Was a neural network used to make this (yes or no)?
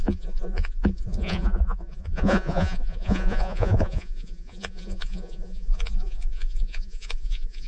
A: yes